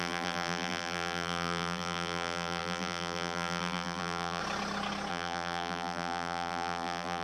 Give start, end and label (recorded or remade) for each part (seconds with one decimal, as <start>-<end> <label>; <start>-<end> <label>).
0.0-4.4 remade; 4.4-5.1 recorded; 5.1-7.2 remade

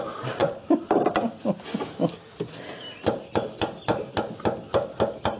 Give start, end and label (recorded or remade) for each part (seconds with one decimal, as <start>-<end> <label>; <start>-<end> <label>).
0.0-2.7 recorded; 2.7-3.2 remade; 3.2-5.4 recorded